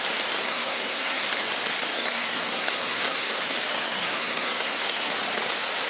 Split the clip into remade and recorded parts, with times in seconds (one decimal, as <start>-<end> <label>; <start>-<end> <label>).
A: 0.0-0.4 recorded; 0.4-1.3 remade; 1.3-1.9 recorded; 1.9-3.3 remade; 3.3-3.7 recorded; 3.7-5.1 remade; 5.1-5.9 recorded